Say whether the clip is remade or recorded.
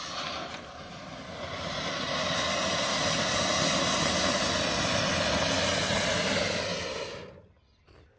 recorded